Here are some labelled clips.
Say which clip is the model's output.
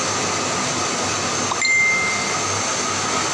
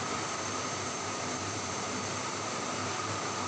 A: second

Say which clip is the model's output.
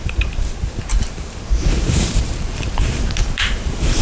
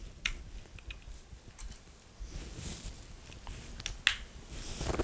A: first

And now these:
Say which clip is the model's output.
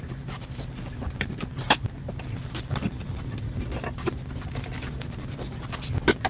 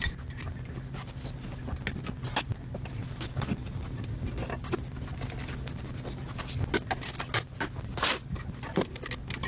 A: first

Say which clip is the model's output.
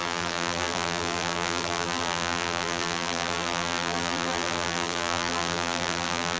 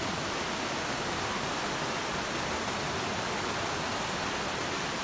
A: first